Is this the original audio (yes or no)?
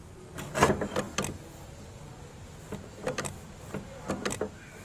yes